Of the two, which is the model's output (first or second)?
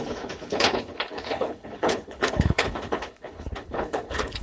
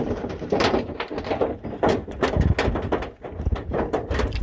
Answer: first